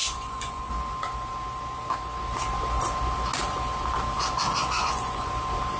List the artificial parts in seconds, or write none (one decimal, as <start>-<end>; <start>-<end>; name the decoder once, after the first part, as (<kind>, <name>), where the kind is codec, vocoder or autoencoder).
0.0-0.7 (vocoder, Vocos); 4.6-5.3